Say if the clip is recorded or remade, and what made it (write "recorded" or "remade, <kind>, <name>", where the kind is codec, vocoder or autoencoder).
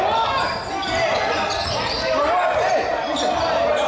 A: recorded